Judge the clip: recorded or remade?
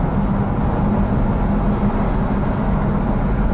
recorded